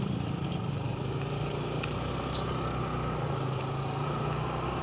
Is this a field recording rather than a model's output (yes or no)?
yes